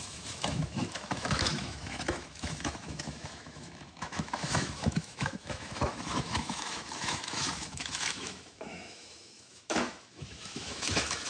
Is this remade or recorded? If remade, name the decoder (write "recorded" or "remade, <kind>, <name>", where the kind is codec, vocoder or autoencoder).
remade, autoencoder, DAC-VAE